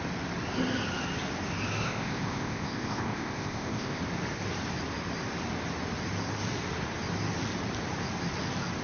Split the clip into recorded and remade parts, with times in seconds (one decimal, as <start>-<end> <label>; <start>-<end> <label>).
0.0-1.8 recorded; 1.8-4.0 remade; 4.0-8.8 recorded